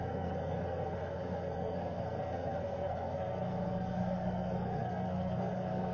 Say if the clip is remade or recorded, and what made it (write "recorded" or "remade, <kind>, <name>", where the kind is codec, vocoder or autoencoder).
remade, codec, SNAC